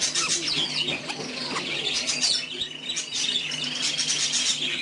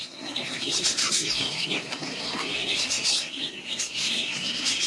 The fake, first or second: second